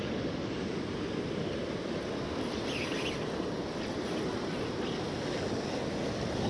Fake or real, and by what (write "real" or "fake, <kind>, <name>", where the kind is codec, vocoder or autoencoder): real